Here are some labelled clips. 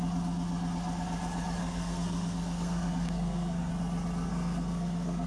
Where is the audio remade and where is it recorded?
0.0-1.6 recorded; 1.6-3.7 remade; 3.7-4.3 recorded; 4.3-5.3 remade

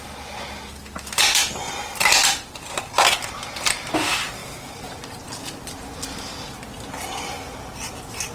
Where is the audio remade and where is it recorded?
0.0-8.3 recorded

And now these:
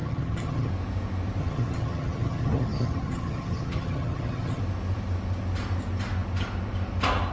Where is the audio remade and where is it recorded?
0.0-0.7 remade; 0.7-1.4 recorded; 1.4-4.6 remade; 4.6-7.3 recorded

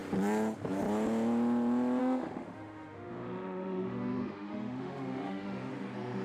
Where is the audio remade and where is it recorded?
0.0-2.0 recorded; 2.0-5.7 remade; 5.7-6.2 recorded

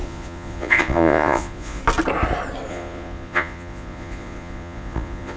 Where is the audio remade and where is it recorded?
0.0-1.8 remade; 1.8-2.7 recorded; 2.7-5.4 remade

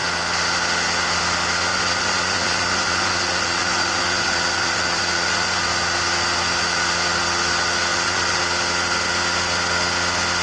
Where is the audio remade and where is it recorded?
0.0-1.7 recorded; 1.7-5.6 remade; 5.6-7.9 recorded; 7.9-8.4 remade; 8.4-10.4 recorded

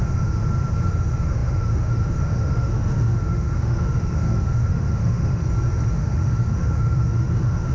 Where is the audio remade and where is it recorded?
0.0-0.4 remade; 0.4-0.9 recorded; 0.9-5.4 remade; 5.4-5.9 recorded; 5.9-7.7 remade

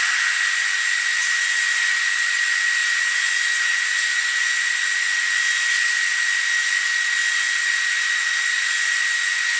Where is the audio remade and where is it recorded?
0.0-4.1 recorded; 4.1-4.7 remade; 4.7-9.6 recorded